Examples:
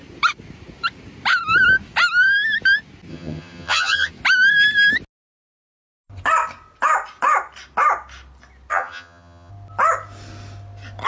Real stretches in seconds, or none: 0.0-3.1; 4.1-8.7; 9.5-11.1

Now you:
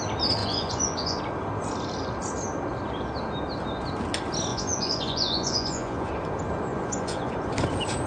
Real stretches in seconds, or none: 0.0-0.4; 1.2-4.5; 6.1-6.7; 7.3-8.1

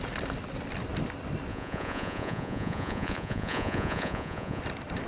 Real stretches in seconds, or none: 0.0-1.5; 4.6-5.1

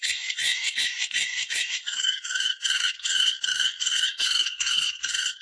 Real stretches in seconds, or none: none